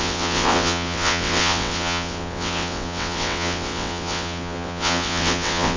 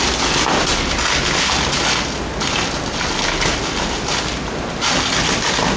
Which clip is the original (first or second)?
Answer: second